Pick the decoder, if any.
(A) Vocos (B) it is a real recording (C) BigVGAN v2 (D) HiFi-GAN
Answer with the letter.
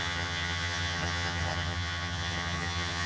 D